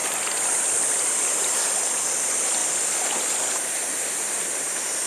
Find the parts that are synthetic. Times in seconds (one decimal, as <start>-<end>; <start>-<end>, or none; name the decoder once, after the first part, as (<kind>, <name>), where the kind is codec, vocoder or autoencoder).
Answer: 0.0-2.6 (vocoder, BigVGAN v2); 3.5-5.1